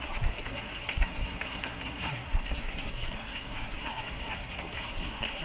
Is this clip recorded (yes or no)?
no